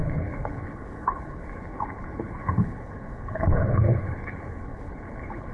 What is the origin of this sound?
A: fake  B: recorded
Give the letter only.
A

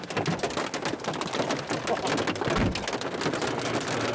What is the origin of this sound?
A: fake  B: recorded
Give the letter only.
B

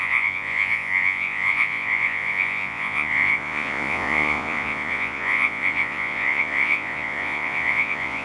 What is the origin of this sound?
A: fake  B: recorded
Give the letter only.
A